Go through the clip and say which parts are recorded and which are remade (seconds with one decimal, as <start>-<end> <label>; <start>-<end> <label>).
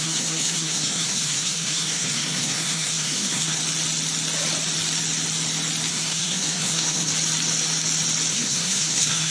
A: 0.0-3.6 remade; 3.6-5.9 recorded; 5.9-7.1 remade; 7.1-8.3 recorded; 8.3-9.3 remade